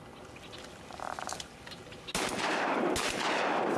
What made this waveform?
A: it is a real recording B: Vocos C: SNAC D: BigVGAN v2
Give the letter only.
A